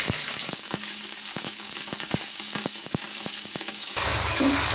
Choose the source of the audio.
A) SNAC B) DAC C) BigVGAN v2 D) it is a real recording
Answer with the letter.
B